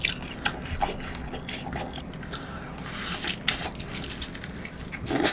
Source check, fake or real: real